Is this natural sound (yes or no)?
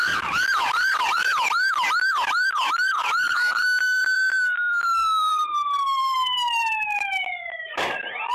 no